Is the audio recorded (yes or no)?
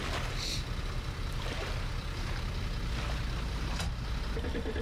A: yes